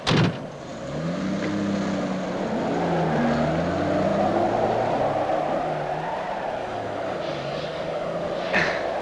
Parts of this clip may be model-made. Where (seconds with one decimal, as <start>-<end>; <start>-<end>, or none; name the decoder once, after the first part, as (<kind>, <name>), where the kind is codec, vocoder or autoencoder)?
6.6-8.3 (codec, DAC)

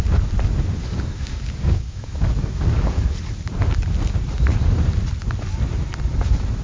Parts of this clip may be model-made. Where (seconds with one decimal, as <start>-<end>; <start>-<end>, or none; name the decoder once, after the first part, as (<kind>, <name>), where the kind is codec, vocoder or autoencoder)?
0.8-3.3 (codec, DAC)

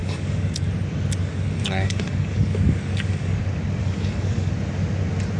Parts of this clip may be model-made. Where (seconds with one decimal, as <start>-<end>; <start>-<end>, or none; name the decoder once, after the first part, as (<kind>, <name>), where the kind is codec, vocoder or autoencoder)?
0.0-0.7 (codec, DAC); 1.2-3.4; 3.8-4.5